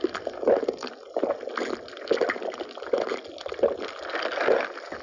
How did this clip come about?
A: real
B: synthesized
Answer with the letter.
A